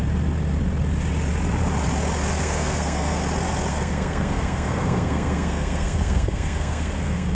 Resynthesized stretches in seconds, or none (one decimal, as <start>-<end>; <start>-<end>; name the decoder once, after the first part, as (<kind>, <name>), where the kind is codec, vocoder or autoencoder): 2.4-3.2 (codec, SNAC); 3.7-7.3